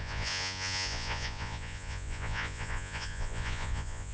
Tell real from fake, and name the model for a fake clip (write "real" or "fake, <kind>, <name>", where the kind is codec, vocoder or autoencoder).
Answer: fake, vocoder, Vocos